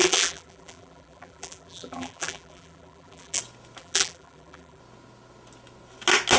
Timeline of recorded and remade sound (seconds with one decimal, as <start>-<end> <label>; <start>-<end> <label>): 0.0-3.4 remade; 3.4-3.8 recorded; 3.8-4.8 remade; 4.8-6.4 recorded